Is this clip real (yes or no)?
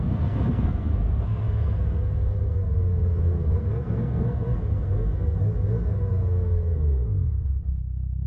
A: no